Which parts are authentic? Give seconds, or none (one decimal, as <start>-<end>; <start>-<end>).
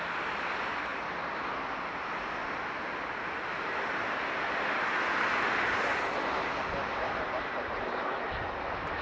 0.0-9.0